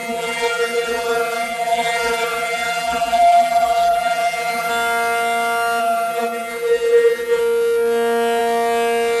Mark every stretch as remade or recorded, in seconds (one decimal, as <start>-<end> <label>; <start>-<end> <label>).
0.0-4.7 remade; 4.7-5.8 recorded; 5.8-7.4 remade; 7.4-9.2 recorded

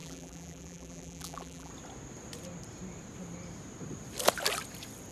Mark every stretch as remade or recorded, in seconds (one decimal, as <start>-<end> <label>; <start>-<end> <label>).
0.0-1.7 remade; 1.7-5.1 recorded

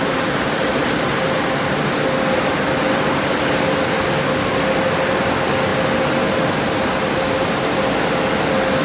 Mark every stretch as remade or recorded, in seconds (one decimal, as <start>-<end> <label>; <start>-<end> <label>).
0.0-8.8 recorded